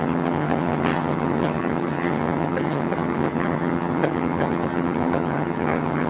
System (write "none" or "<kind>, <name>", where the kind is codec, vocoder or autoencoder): vocoder, HiFi-GAN